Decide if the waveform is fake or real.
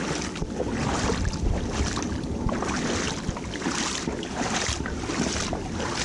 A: real